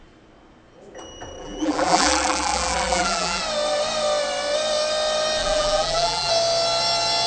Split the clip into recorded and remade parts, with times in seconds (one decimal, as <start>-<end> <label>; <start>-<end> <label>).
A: 0.0-1.4 recorded; 1.4-3.4 remade; 3.4-5.4 recorded; 5.4-6.3 remade; 6.3-7.3 recorded